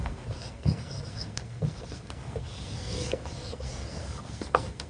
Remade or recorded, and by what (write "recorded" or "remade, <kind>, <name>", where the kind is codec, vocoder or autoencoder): remade, codec, SNAC